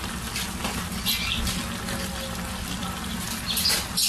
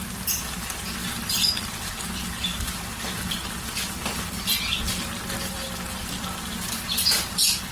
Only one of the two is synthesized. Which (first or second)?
second